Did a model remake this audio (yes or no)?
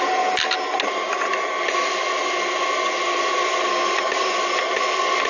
no